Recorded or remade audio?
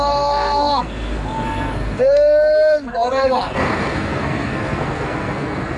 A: remade